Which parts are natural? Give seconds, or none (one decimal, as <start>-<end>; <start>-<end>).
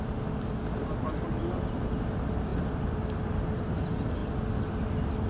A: 0.0-5.3